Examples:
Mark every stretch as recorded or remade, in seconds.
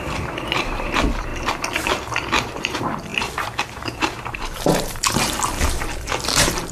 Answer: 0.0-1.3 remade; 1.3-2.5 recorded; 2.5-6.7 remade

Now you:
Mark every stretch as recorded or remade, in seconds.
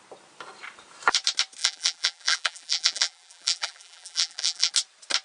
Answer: 0.0-1.6 recorded; 1.6-4.7 remade; 4.7-5.2 recorded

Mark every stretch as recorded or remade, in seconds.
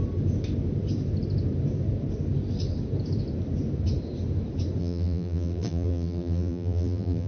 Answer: 0.0-4.8 recorded; 4.8-7.3 remade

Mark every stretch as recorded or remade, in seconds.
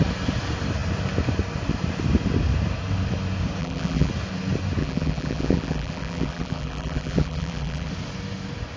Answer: 0.0-3.6 recorded; 3.6-4.1 remade; 4.1-4.8 recorded; 4.8-7.9 remade; 7.9-8.8 recorded